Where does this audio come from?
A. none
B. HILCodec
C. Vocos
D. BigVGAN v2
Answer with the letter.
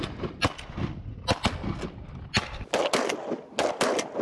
A